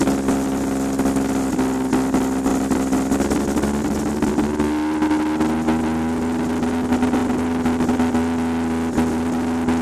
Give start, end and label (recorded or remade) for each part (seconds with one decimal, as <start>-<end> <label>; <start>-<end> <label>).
0.0-9.8 recorded